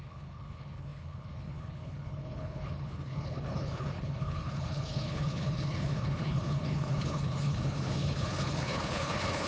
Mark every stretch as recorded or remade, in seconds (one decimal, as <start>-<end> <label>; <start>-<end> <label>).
0.0-9.5 remade